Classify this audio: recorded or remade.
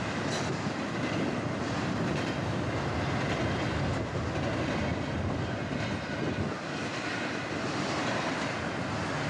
recorded